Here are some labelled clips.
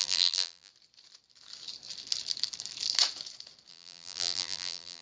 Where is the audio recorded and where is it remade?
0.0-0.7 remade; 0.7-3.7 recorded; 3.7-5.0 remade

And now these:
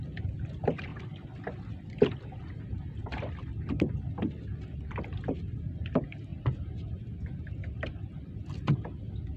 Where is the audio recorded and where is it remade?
0.0-3.0 recorded; 3.0-4.2 remade; 4.2-9.4 recorded

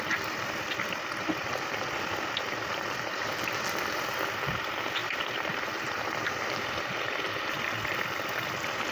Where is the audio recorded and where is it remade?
0.0-5.0 recorded; 5.0-6.1 remade; 6.1-8.9 recorded

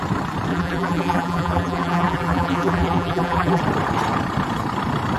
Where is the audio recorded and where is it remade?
0.0-0.5 recorded; 0.5-3.6 remade; 3.6-5.2 recorded